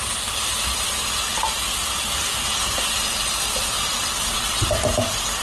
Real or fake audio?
real